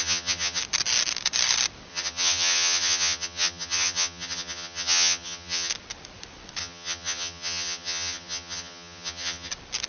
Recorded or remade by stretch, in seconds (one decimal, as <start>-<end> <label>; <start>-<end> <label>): 0.0-0.6 remade; 0.6-1.9 recorded; 1.9-5.7 remade; 5.7-6.6 recorded; 6.6-9.5 remade; 9.5-9.9 recorded